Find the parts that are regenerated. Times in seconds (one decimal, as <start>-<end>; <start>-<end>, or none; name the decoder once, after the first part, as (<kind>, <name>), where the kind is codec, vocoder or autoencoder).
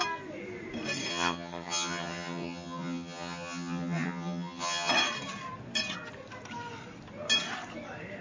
1.1-4.9 (vocoder, HiFi-GAN)